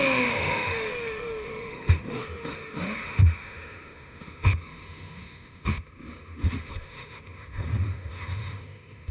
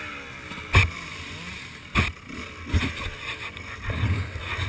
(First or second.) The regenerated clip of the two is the first